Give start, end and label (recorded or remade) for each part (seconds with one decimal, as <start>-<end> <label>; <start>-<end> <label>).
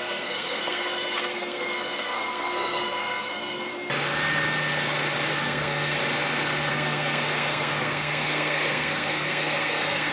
0.0-3.7 remade; 3.7-5.3 recorded; 5.3-6.0 remade; 6.0-6.7 recorded; 6.7-10.1 remade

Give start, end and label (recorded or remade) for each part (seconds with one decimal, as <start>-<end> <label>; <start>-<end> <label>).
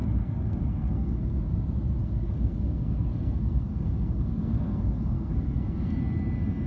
0.0-1.4 remade; 1.4-2.0 recorded; 2.0-6.0 remade; 6.0-6.7 recorded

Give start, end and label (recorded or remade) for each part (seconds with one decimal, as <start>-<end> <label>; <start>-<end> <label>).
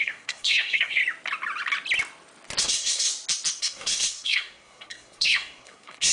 0.0-1.0 remade; 1.0-2.6 recorded; 2.6-3.1 remade; 3.1-3.6 recorded; 3.6-6.1 remade